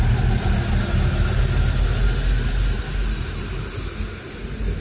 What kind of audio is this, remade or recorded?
recorded